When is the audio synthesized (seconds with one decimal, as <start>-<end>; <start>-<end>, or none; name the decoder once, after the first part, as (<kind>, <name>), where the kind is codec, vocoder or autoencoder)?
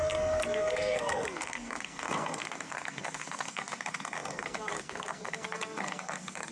0.0-6.5 (codec, SNAC)